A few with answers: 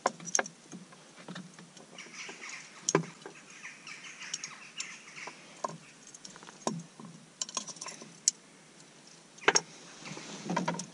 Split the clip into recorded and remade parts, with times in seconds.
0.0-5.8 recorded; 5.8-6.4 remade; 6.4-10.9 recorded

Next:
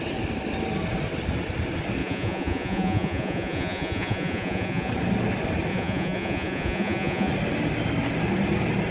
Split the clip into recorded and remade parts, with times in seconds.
0.0-2.0 recorded; 2.0-4.9 remade; 4.9-5.7 recorded; 5.7-7.3 remade; 7.3-8.9 recorded

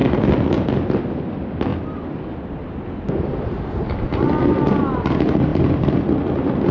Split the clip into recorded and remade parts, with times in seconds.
0.0-1.7 remade; 1.7-4.2 recorded; 4.2-6.7 remade

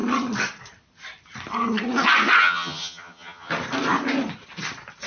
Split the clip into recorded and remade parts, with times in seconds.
0.0-2.4 recorded; 2.4-3.5 remade; 3.5-5.1 recorded

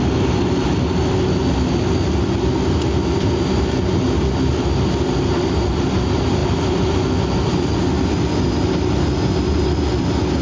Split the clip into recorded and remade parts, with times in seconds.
0.0-10.4 recorded